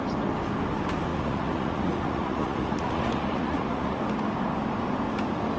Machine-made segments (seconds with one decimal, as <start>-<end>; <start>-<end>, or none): 1.1-4.0